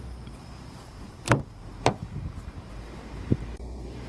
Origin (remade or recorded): remade